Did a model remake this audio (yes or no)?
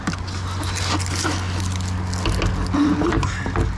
no